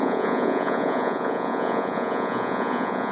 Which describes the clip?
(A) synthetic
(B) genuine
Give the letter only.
A